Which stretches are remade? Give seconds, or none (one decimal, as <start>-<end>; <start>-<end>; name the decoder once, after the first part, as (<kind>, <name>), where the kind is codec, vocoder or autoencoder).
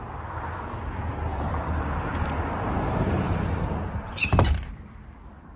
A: 1.3-4.7 (vocoder, BigVGAN v2)